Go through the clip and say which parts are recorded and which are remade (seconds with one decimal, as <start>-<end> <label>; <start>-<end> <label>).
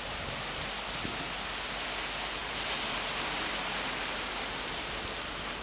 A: 0.0-2.4 recorded; 2.4-3.1 remade; 3.1-5.6 recorded